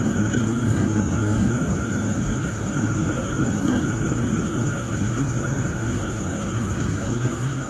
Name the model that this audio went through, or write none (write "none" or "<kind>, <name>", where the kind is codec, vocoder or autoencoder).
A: codec, SNAC